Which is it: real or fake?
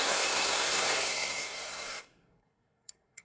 fake